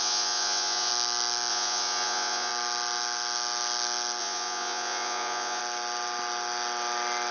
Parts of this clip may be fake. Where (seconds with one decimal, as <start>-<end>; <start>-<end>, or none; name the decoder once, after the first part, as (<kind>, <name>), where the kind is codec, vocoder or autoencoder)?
0.0-0.9 (vocoder, Vocos); 1.5-2.5; 4.2-5.6